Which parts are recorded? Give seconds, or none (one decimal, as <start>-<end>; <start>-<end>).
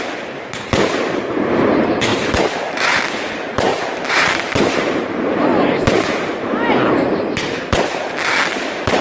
0.0-2.1; 3.0-3.7; 5.1-9.0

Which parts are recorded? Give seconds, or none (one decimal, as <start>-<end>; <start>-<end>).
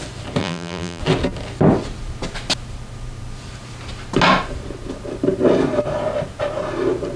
0.0-0.4; 1.0-7.2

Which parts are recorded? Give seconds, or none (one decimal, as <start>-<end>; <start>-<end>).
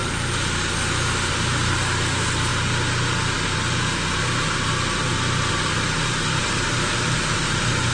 0.0-1.3; 2.5-5.5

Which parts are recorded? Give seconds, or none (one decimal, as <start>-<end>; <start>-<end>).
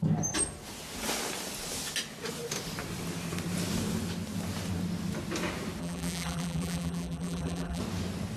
0.0-5.8; 7.8-8.4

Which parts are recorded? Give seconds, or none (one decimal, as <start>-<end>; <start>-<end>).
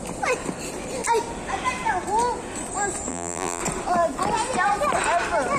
0.0-3.1; 3.6-5.6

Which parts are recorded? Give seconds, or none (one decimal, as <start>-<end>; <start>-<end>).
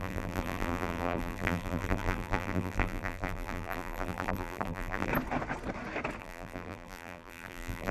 5.1-6.2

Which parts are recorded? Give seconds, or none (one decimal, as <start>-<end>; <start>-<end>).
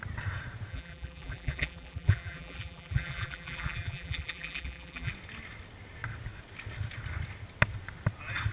0.0-0.7; 5.1-8.5